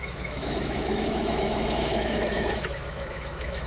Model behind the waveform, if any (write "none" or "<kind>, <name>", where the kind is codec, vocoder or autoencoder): autoencoder, DAC-VAE